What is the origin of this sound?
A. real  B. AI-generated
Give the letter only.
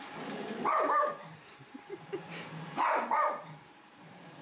B